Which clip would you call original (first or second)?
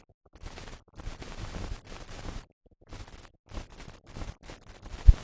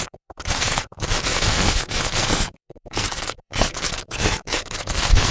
first